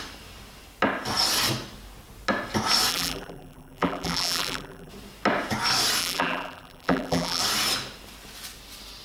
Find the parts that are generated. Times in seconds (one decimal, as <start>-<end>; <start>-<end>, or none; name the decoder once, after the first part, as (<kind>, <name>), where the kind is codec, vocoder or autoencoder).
2.9-4.9 (vocoder, BigVGAN v2); 6.0-7.4